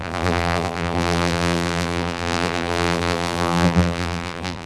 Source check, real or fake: fake